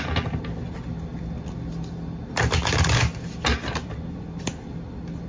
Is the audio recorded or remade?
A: recorded